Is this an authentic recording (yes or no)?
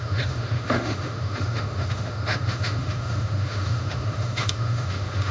no